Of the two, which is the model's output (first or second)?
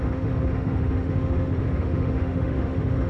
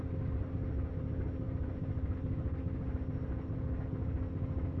first